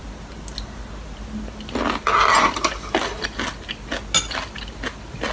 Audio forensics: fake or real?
real